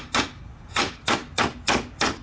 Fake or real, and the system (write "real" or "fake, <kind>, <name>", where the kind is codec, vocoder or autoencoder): real